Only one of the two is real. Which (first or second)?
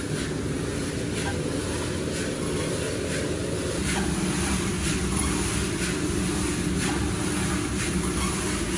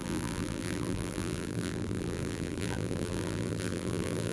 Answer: first